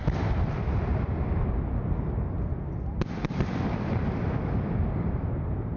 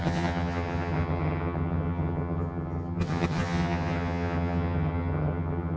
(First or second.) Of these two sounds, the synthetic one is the second